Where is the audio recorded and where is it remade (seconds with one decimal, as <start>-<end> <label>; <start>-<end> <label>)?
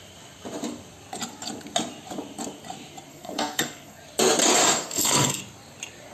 0.0-3.1 recorded; 3.1-4.0 remade; 4.0-4.6 recorded; 4.6-5.4 remade; 5.4-6.1 recorded